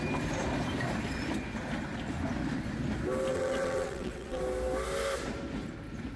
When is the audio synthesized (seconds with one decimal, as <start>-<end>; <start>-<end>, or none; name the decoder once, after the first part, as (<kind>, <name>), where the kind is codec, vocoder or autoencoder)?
3.3-4.4 (vocoder, WaveNeXt)